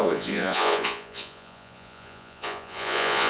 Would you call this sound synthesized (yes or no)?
yes